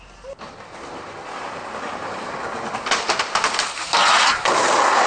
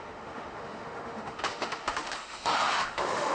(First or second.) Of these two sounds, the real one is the first